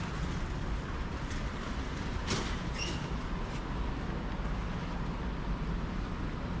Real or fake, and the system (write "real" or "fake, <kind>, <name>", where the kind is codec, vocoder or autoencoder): real